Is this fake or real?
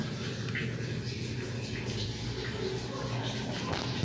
real